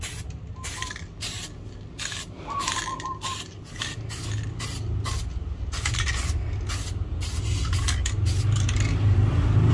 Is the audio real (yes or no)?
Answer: yes